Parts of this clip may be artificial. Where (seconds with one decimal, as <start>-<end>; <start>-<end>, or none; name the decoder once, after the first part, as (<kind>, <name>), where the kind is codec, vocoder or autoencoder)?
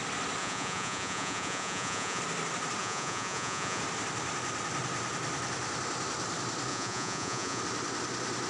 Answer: 0.4-2.2 (vocoder, Vocos); 2.8-3.8; 6.7-7.6